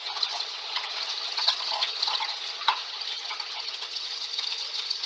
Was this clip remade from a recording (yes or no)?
yes